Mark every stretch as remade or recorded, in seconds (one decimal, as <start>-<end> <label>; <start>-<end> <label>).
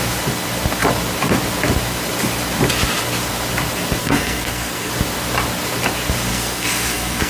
0.0-4.0 recorded; 4.0-4.9 remade; 4.9-6.3 recorded; 6.3-7.3 remade